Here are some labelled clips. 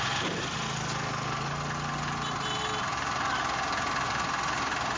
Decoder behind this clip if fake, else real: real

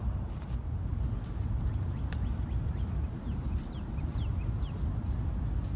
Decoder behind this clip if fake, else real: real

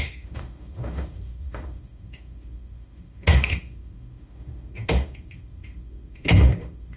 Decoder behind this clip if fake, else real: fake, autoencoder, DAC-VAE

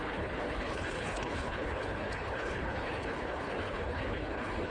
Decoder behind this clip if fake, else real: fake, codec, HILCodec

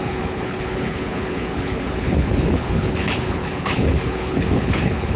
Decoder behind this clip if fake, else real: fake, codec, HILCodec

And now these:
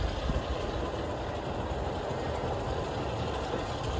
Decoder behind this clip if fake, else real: real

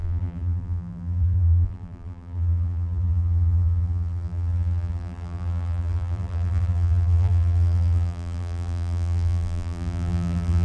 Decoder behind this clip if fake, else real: fake, vocoder, BigVGAN v2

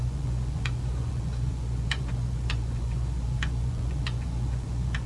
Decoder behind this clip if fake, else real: fake, vocoder, Vocos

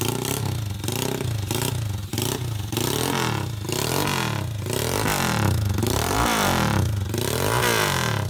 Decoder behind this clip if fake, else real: real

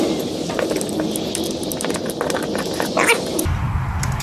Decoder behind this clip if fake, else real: real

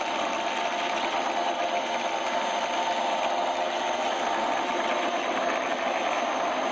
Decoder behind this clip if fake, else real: real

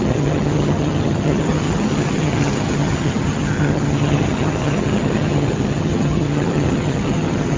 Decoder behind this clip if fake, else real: fake, vocoder, HiFi-GAN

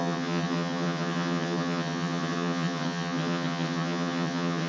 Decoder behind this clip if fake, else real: fake, vocoder, HiFi-GAN